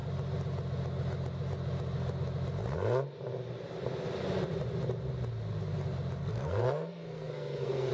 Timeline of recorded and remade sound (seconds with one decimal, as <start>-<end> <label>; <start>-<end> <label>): 0.0-6.2 recorded; 6.2-7.9 remade